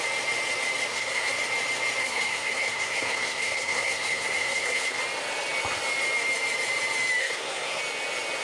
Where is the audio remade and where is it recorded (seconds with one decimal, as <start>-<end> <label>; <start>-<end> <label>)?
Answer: 0.0-0.9 recorded; 0.9-1.4 remade; 1.4-2.0 recorded; 2.0-5.0 remade; 5.0-7.2 recorded; 7.2-7.8 remade; 7.8-8.4 recorded